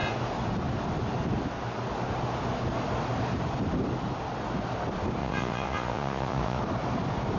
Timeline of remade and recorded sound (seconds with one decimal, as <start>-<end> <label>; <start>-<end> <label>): 0.0-5.2 recorded; 5.2-6.6 remade; 6.6-7.4 recorded